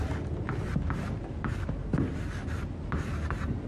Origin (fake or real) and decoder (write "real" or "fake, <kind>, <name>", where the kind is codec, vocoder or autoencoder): fake, vocoder, BigVGAN v2